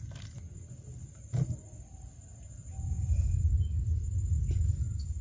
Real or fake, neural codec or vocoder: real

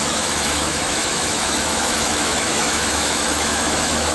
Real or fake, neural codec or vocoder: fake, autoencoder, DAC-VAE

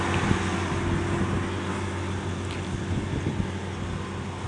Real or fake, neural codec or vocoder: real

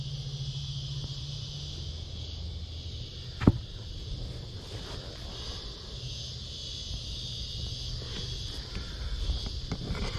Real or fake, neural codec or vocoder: real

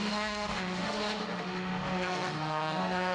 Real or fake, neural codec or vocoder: fake, autoencoder, DAC-VAE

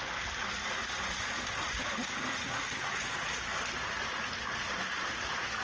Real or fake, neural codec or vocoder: real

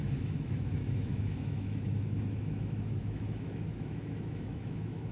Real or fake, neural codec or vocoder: fake, autoencoder, DAC-VAE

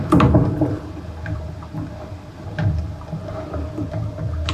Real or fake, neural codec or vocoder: real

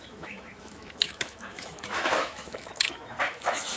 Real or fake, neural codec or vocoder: fake, autoencoder, DAC-VAE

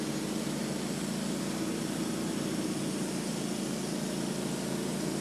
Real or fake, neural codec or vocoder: real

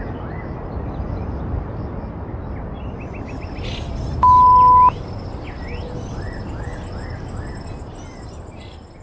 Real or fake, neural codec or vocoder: real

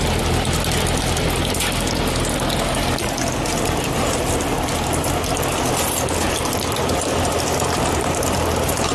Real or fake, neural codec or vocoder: real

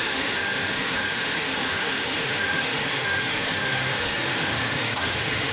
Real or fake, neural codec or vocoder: fake, autoencoder, DAC-VAE